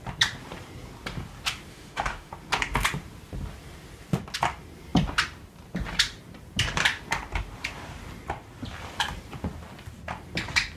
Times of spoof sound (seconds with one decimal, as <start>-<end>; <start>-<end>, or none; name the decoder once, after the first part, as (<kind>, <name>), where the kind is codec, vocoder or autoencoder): 1.7-2.3 (autoencoder, DAC-VAE)